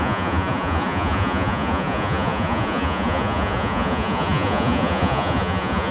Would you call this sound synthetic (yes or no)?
yes